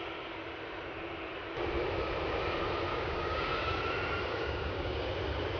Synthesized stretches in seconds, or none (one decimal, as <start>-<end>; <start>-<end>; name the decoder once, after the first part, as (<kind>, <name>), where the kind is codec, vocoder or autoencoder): 2.9-3.7 (codec, DAC); 4.3-5.1